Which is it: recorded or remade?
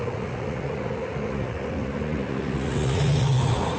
remade